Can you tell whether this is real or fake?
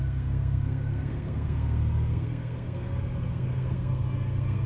fake